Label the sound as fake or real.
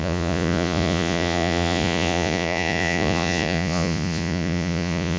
fake